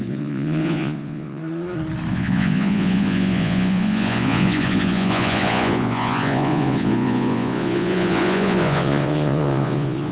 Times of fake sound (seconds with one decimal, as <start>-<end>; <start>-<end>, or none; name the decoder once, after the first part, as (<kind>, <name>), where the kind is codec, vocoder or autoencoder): 0.0-1.4 (vocoder, Vocos); 2.1-10.1